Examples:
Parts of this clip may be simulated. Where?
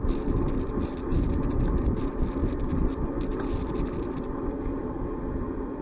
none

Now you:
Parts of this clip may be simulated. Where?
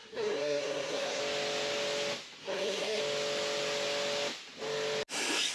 0.0-1.2 (codec, SNAC); 2.4-3.0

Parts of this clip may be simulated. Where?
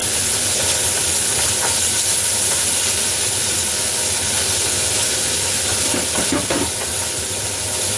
none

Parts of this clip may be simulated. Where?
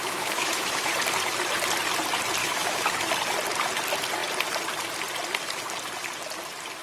0.0-0.9 (autoencoder, DAC-VAE); 2.4-3.1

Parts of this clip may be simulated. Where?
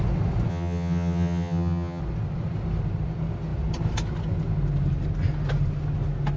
0.5-2.0 (vocoder, HiFi-GAN)